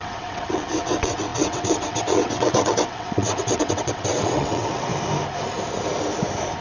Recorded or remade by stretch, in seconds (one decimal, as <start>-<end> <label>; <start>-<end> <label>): 0.0-4.9 remade; 4.9-6.6 recorded